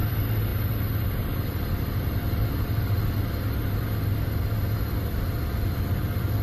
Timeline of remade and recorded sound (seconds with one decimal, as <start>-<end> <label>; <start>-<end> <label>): 0.0-6.4 remade